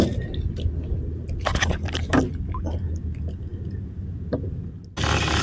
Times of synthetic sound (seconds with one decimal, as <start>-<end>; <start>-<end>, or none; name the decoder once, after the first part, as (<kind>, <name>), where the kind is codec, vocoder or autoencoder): 1.5-2.2 (vocoder, BigVGAN v2)